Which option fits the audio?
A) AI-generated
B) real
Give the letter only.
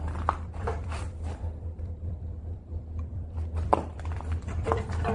A